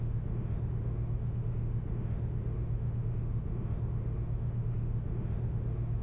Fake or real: fake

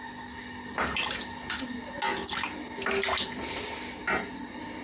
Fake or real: real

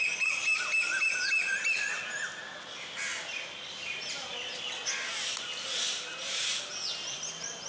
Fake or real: real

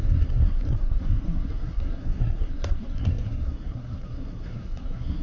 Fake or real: fake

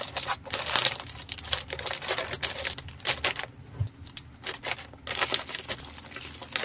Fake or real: real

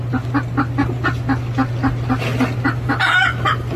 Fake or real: real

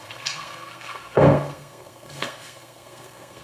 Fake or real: fake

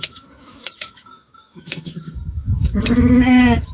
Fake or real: fake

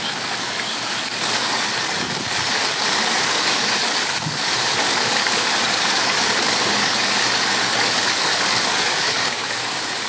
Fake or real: fake